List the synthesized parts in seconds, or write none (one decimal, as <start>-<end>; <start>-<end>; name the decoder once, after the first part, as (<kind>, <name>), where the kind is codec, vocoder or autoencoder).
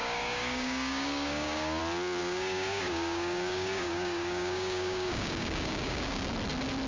0.0-1.8 (codec, DAC); 2.2-6.3